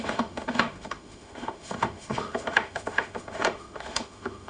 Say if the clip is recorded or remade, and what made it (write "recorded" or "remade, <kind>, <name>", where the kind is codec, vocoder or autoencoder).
remade, autoencoder, DAC-VAE